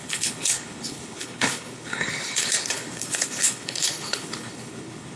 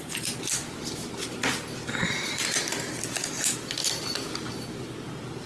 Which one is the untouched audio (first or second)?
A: second